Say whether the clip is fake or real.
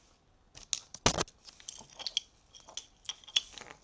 real